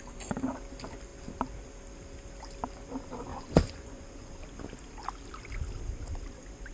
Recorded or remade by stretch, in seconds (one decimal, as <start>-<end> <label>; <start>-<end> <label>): 0.0-3.3 recorded; 3.3-4.3 remade; 4.3-6.7 recorded